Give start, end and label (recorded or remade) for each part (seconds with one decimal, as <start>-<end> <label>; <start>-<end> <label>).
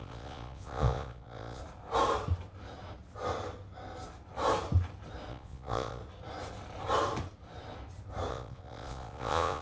0.0-1.6 remade; 1.6-5.3 recorded; 5.3-6.0 remade; 6.0-8.3 recorded; 8.3-9.6 remade